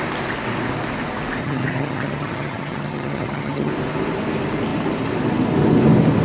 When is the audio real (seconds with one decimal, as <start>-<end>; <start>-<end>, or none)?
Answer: 0.0-1.4; 3.7-6.2

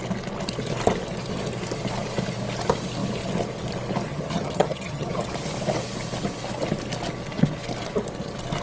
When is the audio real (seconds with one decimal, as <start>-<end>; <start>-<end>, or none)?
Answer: 0.0-4.1; 5.3-8.6

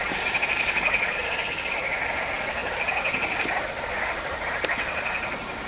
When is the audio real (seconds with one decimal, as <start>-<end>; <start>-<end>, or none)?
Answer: 0.0-5.7

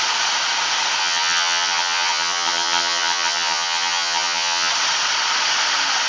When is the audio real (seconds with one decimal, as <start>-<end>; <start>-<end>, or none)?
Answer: 0.0-1.0; 4.7-6.1

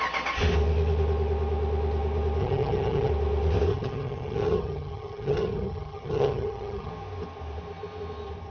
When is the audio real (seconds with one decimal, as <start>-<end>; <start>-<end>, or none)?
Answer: 0.0-2.4; 3.1-3.7; 6.9-8.5

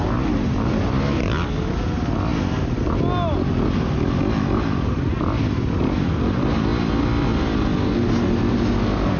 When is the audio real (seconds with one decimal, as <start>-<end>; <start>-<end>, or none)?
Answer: 0.0-9.2

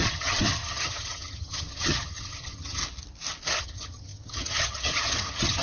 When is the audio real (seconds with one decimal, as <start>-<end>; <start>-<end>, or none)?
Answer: 2.8-3.6